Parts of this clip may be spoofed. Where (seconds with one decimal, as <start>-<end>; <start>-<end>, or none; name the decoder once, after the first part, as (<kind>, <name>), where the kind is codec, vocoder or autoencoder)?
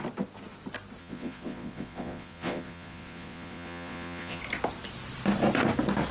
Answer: 1.0-4.4 (vocoder, Vocos)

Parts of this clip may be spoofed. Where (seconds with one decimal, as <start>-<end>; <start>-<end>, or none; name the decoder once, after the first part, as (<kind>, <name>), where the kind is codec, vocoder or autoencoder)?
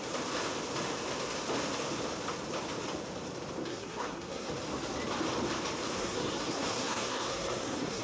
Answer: 3.7-4.5 (codec, SNAC); 6.0-8.0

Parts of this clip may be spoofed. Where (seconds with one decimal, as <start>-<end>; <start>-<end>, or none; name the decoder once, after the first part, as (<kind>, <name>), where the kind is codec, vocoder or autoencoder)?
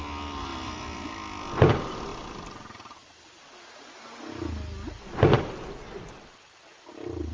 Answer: 0.5-1.7 (vocoder, BigVGAN v2); 5.8-6.4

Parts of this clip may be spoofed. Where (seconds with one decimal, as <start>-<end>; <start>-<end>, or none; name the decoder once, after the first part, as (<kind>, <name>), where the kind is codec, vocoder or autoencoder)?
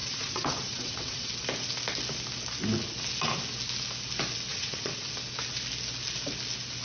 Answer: 0.0-1.3 (vocoder, WaveNeXt); 4.5-5.1